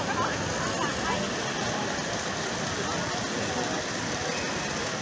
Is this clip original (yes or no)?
yes